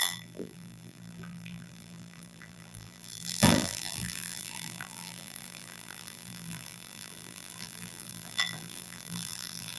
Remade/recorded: remade